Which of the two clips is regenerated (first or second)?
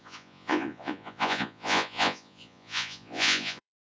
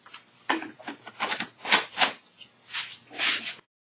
first